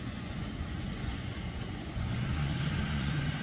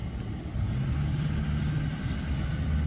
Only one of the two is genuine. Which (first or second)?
second